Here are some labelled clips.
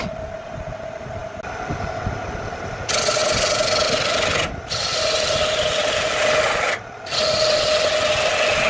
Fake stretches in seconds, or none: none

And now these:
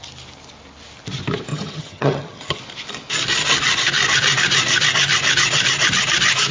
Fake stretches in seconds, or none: 1.5-2.6 (vocoder, HiFi-GAN)

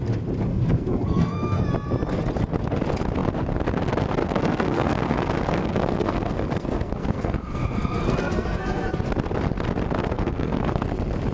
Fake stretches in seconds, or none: 0.5-1.6 (codec, SNAC); 4.2-8.9; 10.0-10.8

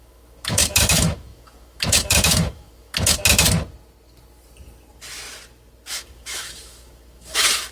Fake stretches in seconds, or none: 0.0-3.2 (autoencoder, DAC-VAE); 5.9-7.7

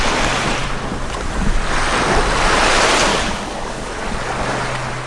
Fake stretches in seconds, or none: 3.1-4.1 (codec, DAC)